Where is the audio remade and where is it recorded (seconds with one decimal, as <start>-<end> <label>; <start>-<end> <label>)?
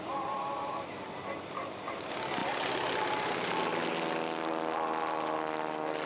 0.0-6.1 recorded